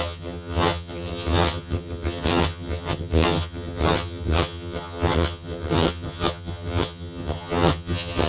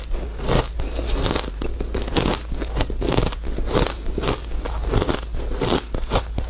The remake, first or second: first